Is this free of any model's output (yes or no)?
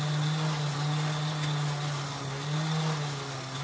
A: yes